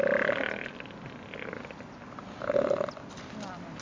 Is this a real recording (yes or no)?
yes